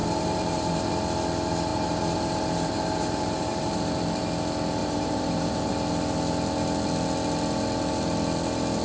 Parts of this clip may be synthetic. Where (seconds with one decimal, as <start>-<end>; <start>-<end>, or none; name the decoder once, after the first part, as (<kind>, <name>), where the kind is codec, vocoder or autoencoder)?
0.0-0.9 (vocoder, BigVGAN v2); 1.7-4.3; 4.8-5.7